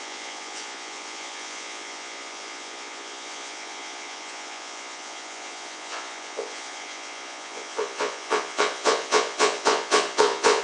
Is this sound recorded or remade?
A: remade